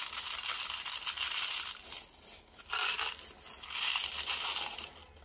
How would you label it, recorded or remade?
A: recorded